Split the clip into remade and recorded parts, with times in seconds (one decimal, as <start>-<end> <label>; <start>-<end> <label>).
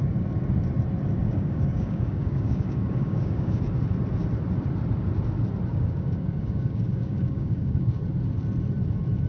0.0-1.2 recorded; 1.2-3.6 remade; 3.6-5.7 recorded; 5.7-8.0 remade; 8.0-9.3 recorded